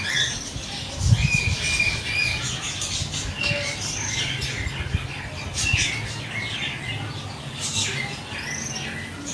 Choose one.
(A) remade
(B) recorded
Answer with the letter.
B